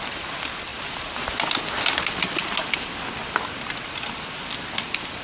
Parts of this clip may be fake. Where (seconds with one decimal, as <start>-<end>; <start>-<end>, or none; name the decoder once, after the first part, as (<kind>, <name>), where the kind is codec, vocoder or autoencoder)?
none